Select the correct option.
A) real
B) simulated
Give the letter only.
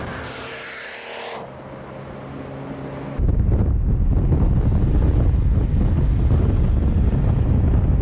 A